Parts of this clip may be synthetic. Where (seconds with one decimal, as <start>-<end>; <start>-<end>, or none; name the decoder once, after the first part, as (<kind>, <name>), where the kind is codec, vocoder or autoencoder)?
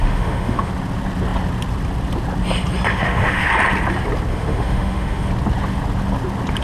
0.0-0.7 (autoencoder, DAC-VAE); 2.9-3.5; 4.3-5.3